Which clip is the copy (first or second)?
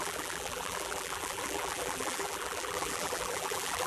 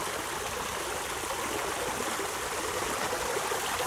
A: first